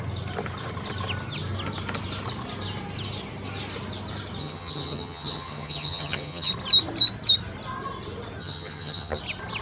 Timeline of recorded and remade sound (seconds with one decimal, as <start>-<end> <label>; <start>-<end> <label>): 0.0-4.4 recorded; 4.4-6.5 remade; 6.5-8.4 recorded; 8.4-9.2 remade; 9.2-9.6 recorded